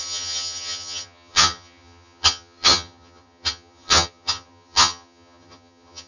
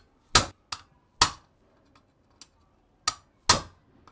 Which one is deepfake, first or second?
first